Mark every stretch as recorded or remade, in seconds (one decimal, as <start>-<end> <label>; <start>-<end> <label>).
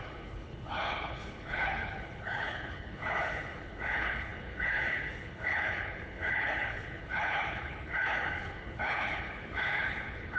0.0-10.4 remade